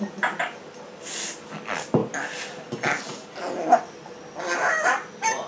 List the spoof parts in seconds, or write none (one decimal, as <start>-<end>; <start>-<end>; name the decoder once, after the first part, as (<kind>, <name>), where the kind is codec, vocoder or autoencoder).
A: none